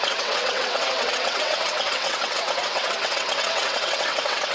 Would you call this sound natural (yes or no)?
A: no